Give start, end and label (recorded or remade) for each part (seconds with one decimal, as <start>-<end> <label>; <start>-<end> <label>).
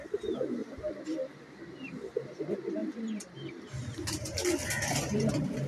0.0-5.7 recorded